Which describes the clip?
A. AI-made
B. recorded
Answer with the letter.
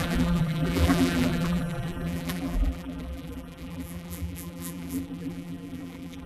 A